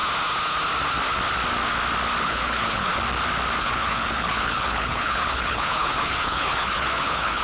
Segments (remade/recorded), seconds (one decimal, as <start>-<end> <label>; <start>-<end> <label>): 0.0-2.2 recorded; 2.2-2.9 remade; 2.9-3.6 recorded; 3.6-7.4 remade